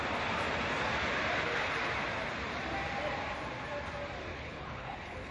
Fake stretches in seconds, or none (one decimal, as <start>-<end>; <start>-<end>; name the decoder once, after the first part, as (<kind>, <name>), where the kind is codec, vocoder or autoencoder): 4.3-5.3 (codec, HILCodec)